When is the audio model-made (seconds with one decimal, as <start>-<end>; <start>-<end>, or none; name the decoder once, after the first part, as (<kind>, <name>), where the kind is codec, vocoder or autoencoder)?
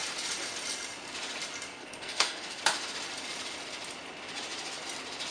1.7-2.6 (codec, SNAC)